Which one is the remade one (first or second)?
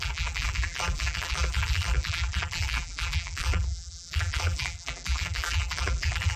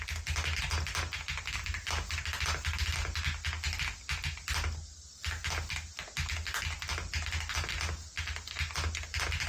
first